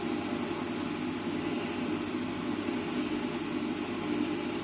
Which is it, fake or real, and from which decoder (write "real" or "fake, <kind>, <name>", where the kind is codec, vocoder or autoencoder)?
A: real